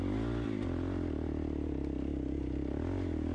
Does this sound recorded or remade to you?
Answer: recorded